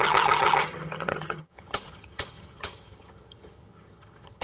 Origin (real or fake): fake